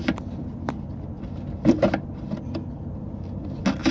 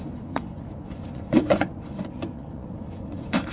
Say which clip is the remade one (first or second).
second